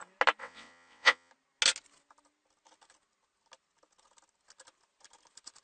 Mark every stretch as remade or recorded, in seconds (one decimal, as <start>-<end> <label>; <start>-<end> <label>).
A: 0.0-0.4 recorded; 0.4-1.3 remade; 1.3-5.6 recorded